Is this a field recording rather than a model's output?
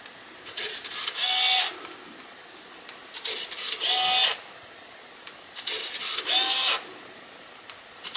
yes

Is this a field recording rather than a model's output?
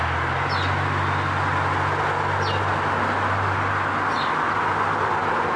yes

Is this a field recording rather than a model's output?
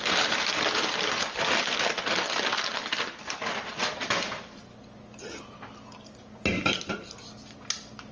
yes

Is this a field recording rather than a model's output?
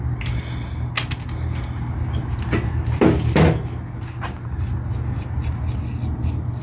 yes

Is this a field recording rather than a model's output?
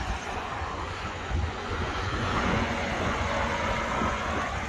no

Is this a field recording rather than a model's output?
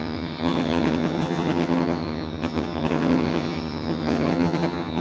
no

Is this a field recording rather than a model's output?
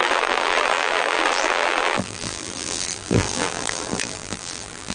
no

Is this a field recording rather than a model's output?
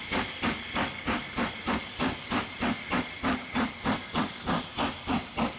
yes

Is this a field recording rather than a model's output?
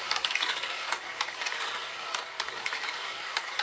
no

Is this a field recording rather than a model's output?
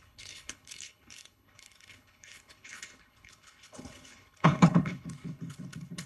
no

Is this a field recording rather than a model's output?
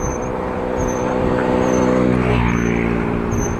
no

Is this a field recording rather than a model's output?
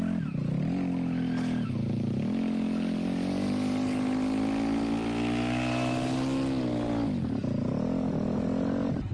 yes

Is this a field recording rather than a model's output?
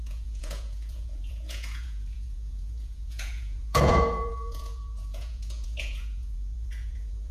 no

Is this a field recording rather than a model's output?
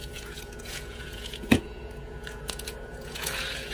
no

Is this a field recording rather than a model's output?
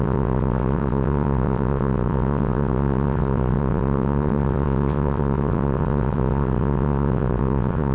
no